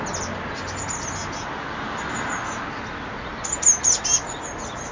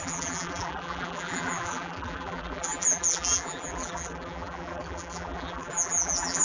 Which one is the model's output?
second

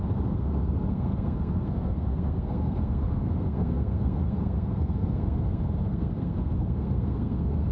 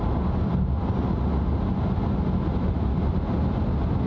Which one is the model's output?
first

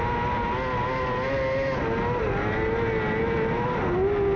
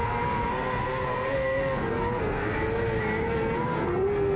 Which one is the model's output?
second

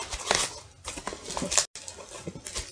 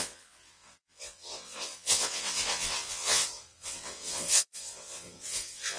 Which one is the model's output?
second